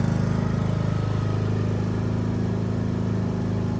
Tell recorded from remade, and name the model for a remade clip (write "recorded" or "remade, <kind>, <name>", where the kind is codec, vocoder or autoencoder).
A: recorded